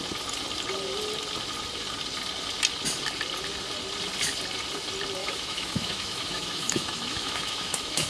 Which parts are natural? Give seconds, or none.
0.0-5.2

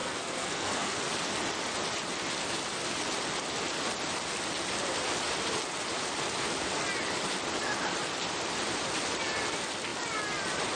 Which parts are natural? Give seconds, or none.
1.0-10.8

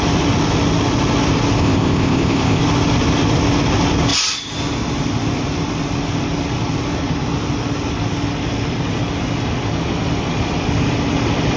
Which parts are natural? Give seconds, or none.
0.0-1.6; 2.6-11.6

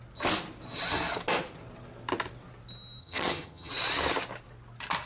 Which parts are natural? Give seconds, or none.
0.0-3.0; 3.7-5.1

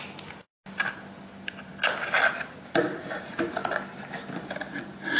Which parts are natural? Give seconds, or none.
0.0-5.2